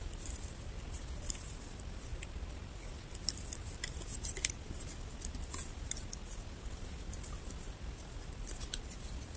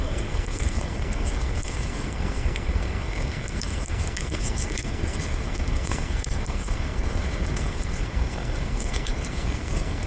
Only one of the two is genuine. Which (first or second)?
first